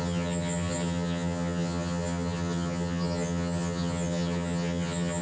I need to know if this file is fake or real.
fake